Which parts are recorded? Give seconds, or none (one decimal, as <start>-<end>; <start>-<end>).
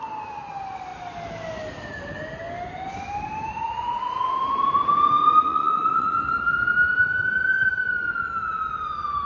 0.0-3.5; 4.3-5.5; 6.3-9.3